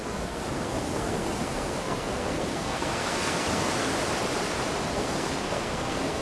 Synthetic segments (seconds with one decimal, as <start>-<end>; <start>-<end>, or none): 0.0-3.9; 4.8-6.2